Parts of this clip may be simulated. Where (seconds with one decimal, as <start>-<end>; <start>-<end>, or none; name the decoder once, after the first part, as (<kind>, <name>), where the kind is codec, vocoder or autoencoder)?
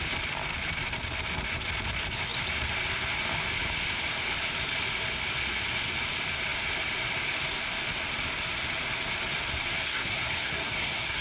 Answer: 9.8-11.2 (codec, SNAC)